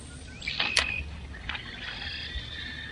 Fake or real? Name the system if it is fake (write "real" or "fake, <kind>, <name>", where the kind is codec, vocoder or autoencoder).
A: real